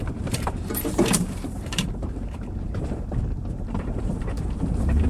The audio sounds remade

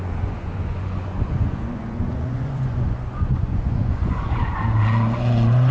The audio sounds remade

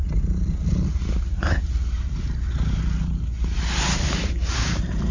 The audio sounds recorded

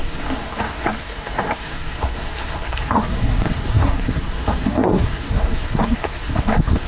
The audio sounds remade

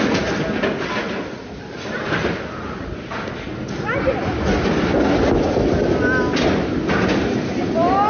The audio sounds recorded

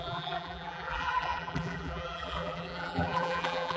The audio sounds remade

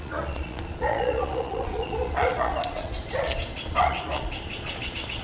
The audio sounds remade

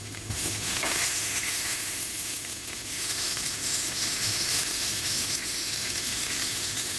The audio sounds remade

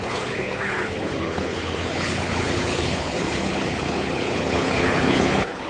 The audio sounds remade